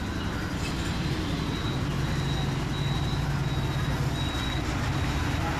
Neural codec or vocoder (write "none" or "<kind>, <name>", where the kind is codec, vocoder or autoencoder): none